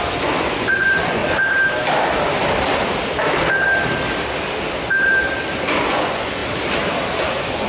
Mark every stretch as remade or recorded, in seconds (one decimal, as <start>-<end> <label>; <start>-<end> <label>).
0.0-1.2 remade; 1.2-5.6 recorded; 5.6-6.4 remade; 6.4-7.3 recorded; 7.3-7.7 remade